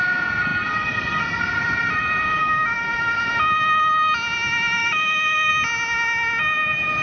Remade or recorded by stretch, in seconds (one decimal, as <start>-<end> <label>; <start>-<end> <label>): 0.0-2.4 recorded; 2.4-3.2 remade; 3.2-4.8 recorded; 4.8-5.5 remade; 5.5-7.0 recorded